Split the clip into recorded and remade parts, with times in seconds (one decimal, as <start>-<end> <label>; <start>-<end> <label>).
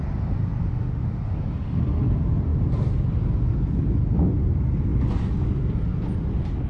0.0-0.6 recorded; 0.6-1.2 remade; 1.2-6.7 recorded